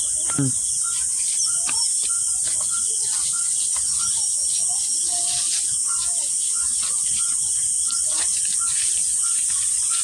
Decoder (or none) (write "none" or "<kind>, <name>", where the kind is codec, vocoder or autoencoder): none